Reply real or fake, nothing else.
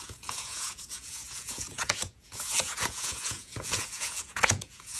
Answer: fake